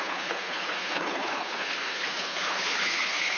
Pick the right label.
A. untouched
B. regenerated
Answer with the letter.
B